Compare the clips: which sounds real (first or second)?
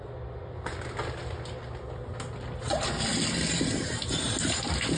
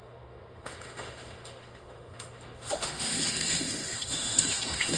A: first